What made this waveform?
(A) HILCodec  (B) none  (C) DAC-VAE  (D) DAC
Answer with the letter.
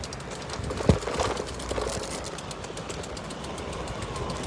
B